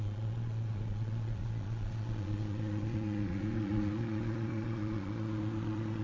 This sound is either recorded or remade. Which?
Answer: remade